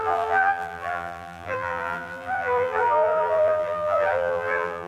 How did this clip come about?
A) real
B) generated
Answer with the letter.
B